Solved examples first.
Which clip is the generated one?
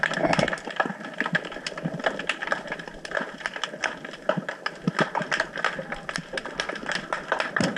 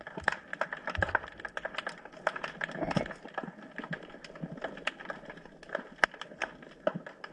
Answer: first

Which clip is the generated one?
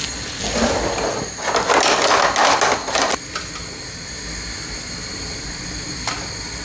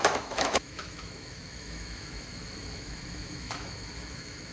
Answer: second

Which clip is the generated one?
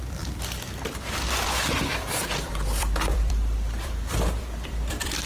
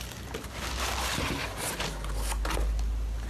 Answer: first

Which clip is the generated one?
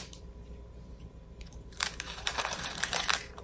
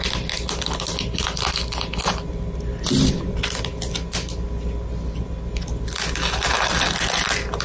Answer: first